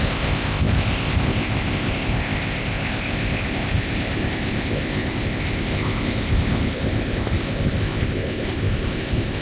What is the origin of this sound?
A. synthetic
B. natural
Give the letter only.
A